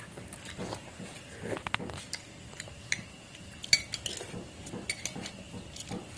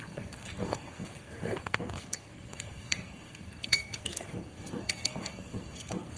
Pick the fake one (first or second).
second